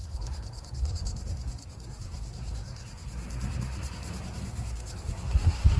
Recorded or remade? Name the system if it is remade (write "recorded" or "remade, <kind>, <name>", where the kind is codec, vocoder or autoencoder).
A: remade, codec, SNAC